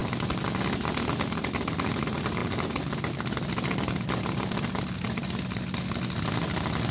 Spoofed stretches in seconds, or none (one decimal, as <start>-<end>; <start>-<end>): none